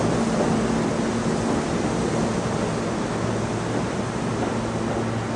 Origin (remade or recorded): recorded